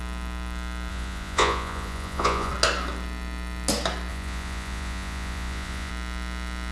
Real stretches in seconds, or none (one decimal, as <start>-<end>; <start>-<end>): 0.0-0.9; 2.5-4.1; 5.9-6.7